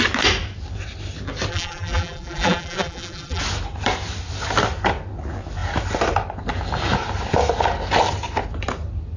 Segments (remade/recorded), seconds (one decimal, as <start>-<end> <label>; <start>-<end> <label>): 0.0-1.5 recorded; 1.5-3.4 remade; 3.4-9.2 recorded